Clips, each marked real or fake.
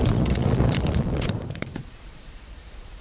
fake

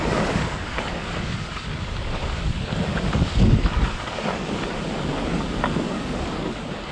fake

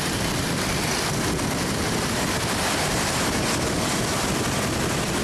real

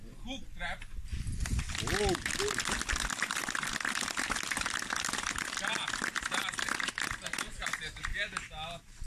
real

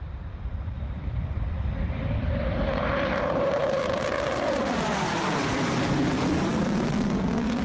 fake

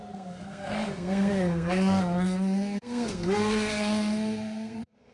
fake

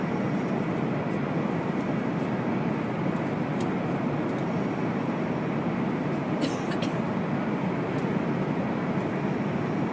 real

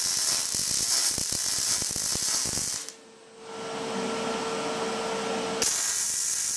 real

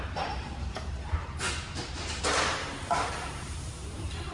fake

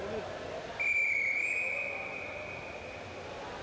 real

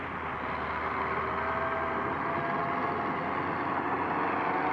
real